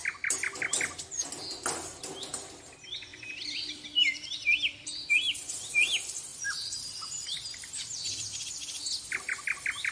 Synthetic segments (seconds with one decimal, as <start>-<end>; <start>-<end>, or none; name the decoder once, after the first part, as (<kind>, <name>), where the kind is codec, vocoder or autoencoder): 3.1-5.1 (vocoder, BigVGAN v2); 6.3-9.2